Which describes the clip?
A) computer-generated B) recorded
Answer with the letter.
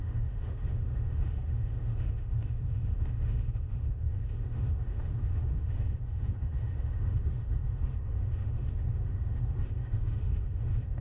A